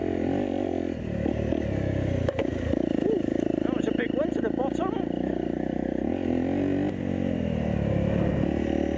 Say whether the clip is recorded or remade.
recorded